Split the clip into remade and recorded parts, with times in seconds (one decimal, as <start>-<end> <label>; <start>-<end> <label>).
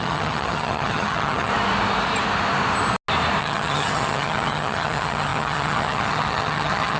0.0-1.5 remade; 1.5-3.4 recorded; 3.4-7.0 remade